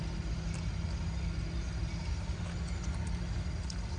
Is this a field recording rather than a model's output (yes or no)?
yes